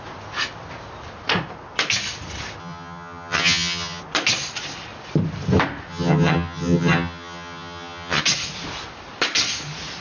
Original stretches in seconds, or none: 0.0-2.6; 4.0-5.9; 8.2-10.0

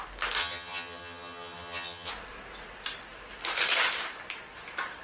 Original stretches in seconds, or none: 0.0-0.4; 2.1-5.0

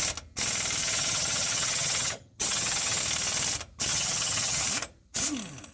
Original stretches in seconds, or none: 0.0-0.8; 3.0-3.9; 4.6-5.7

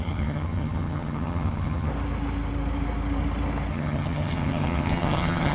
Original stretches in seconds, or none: 1.9-3.7

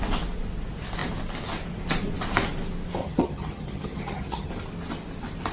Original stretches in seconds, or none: 0.0-3.0; 4.5-5.5

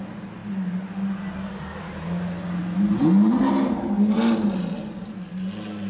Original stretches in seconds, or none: 0.0-5.9

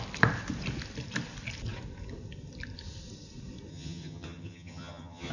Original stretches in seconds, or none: 0.0-3.7